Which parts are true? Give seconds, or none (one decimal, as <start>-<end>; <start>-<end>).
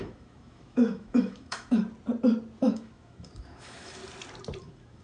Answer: 1.8-2.6; 4.0-4.6